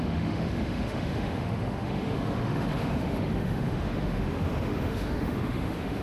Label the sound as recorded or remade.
remade